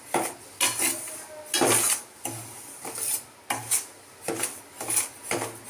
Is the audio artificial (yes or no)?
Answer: no